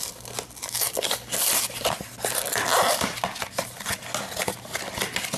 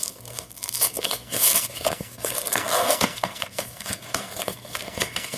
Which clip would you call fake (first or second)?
second